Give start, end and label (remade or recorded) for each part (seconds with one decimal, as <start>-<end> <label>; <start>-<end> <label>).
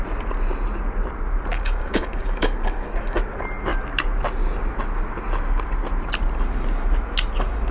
0.0-1.5 recorded; 1.5-3.2 remade; 3.2-7.7 recorded